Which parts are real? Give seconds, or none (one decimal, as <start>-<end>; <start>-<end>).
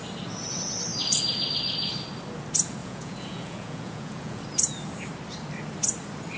0.0-2.8; 4.4-6.4